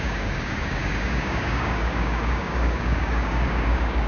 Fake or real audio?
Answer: fake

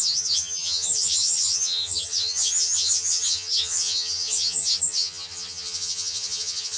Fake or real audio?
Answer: fake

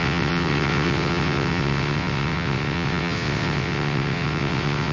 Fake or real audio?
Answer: fake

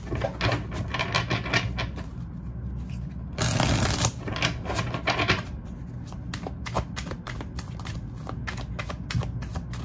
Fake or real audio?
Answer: real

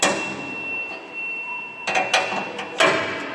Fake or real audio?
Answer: real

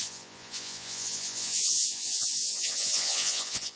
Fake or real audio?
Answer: fake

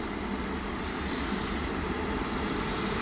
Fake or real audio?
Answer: real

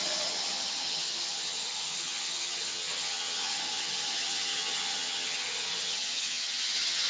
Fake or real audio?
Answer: fake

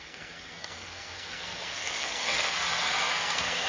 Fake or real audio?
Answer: fake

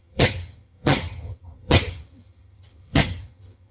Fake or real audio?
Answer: fake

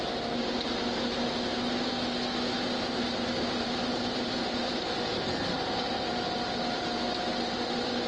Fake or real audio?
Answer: real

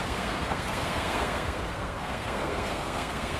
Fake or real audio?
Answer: fake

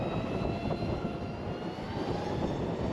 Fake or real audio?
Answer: real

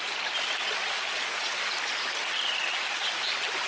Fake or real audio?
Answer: real